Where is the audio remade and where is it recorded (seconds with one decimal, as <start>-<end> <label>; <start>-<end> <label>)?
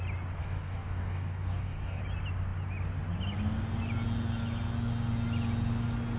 0.0-0.4 recorded; 0.4-2.0 remade; 2.0-6.2 recorded